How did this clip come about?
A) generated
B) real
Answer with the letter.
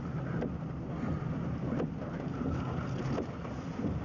B